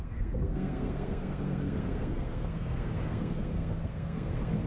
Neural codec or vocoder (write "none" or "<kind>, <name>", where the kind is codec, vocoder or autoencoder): codec, SNAC